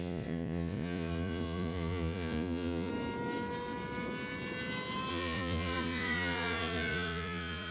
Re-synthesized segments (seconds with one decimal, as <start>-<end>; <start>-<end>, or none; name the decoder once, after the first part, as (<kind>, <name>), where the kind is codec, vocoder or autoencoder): 0.0-2.9 (vocoder, Vocos); 5.1-7.7